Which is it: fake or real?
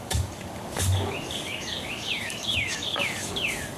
fake